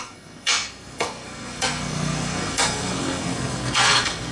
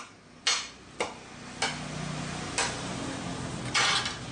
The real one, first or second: second